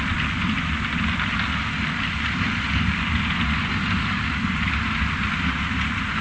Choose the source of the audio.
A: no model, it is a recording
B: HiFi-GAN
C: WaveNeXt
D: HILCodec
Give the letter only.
A